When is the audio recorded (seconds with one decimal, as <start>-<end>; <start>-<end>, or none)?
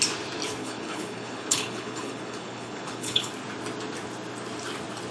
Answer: 0.0-0.6; 3.3-5.1